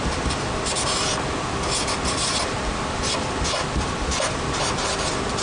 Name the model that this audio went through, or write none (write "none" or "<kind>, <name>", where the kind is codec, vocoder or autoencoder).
none